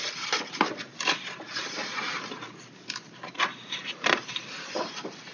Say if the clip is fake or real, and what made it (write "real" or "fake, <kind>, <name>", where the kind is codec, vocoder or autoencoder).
fake, vocoder, BigVGAN v2